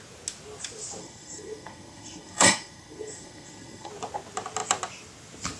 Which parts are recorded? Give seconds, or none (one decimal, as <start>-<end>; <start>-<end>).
0.0-1.0; 3.9-5.6